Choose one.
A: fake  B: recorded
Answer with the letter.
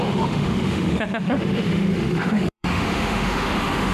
A